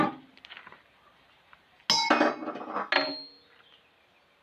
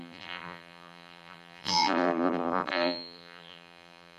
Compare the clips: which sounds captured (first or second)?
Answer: first